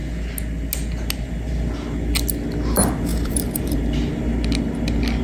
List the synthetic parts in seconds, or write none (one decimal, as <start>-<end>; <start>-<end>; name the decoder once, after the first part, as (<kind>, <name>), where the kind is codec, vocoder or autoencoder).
3.1-4.1 (vocoder, BigVGAN v2)